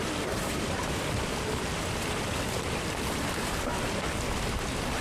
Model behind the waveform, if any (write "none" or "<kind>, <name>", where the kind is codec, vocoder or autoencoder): none